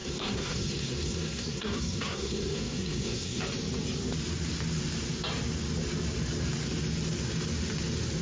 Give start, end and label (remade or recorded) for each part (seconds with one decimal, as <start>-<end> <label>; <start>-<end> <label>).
0.0-3.4 remade; 3.4-8.2 recorded

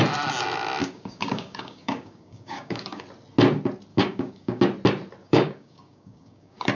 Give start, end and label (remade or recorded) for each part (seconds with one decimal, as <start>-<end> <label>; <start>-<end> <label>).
0.0-0.8 recorded; 0.8-3.0 remade; 3.0-3.9 recorded; 3.9-4.6 remade; 4.6-5.2 recorded; 5.2-6.7 remade

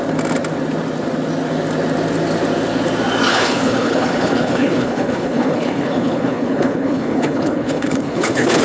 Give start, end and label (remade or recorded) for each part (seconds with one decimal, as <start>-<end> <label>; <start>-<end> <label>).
0.0-3.3 recorded; 3.3-8.6 remade

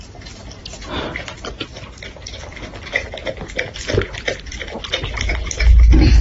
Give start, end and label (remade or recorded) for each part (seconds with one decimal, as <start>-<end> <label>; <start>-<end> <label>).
0.0-4.5 recorded; 4.5-5.3 remade; 5.3-6.2 recorded

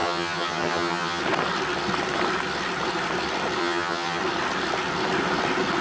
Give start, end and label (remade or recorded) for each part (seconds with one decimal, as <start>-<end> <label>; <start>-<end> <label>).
0.0-1.2 remade; 1.2-3.6 recorded; 3.6-4.2 remade; 4.2-5.8 recorded

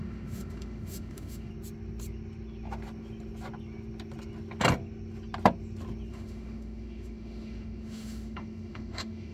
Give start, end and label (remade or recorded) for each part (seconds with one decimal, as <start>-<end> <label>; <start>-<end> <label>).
0.0-1.5 remade; 1.5-6.1 recorded; 6.1-9.3 remade